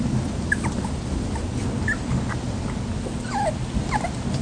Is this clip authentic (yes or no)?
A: yes